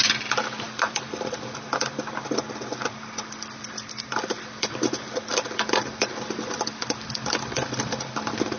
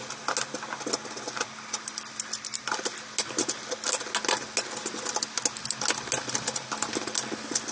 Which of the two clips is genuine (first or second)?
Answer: second